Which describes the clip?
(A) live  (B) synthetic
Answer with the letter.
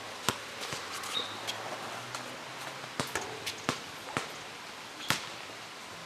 A